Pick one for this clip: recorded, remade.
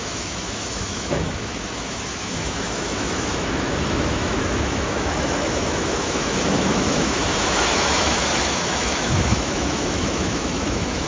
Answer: remade